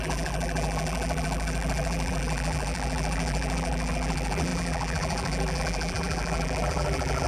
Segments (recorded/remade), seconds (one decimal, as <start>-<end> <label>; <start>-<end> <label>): 0.0-7.3 remade